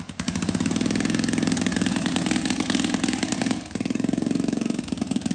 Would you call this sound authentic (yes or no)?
no